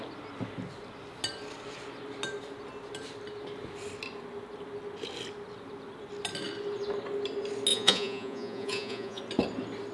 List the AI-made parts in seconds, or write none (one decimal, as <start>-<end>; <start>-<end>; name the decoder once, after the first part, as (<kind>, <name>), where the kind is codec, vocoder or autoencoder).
7.7-9.2 (vocoder, Vocos)